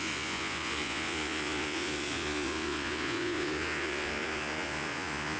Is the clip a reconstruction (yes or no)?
yes